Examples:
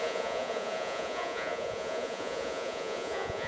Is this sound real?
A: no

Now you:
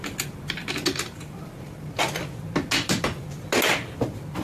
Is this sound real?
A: yes